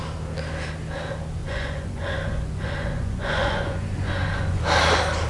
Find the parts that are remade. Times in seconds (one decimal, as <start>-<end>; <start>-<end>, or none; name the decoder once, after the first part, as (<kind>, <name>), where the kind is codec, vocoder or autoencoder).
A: 1.4-4.6 (vocoder, Vocos)